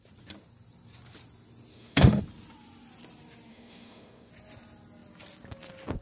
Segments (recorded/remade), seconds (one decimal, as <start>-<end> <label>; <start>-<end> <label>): 0.0-1.7 recorded; 1.7-2.2 remade; 2.2-3.5 recorded; 3.5-4.3 remade; 4.3-6.0 recorded